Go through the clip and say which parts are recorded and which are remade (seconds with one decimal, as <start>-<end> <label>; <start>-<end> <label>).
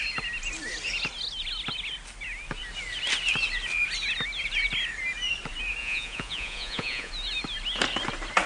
0.0-5.8 recorded; 5.8-7.1 remade; 7.1-8.5 recorded